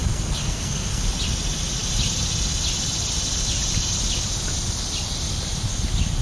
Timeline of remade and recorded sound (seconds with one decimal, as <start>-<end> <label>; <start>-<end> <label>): 0.0-1.0 remade; 1.0-6.2 recorded